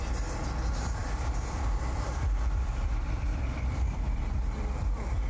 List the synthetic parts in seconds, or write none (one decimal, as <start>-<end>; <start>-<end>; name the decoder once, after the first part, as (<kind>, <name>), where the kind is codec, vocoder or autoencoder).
1.0-4.2 (vocoder, BigVGAN v2)